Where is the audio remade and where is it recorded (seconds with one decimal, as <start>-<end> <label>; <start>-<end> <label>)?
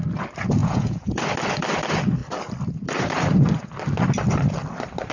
0.0-0.6 recorded; 0.6-1.2 remade; 1.2-5.1 recorded